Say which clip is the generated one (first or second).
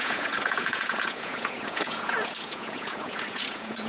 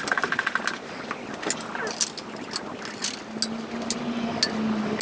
first